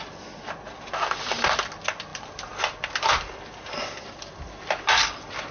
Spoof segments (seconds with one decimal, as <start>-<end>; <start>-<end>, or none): 2.1-4.7